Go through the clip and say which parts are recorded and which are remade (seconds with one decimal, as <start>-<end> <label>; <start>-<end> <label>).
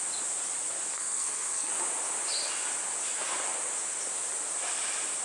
0.0-0.9 recorded; 0.9-1.7 remade; 1.7-5.2 recorded